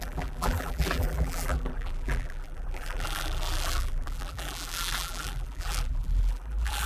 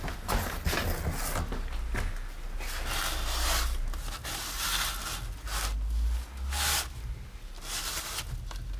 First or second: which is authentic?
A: second